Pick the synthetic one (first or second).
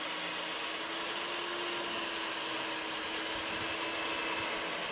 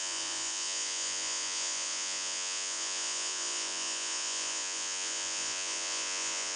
second